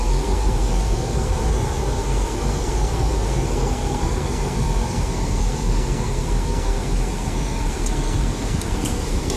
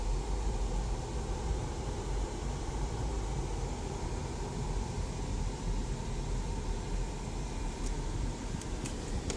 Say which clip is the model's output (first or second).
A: first